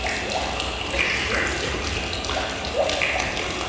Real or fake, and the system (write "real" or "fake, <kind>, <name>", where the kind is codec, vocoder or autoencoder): real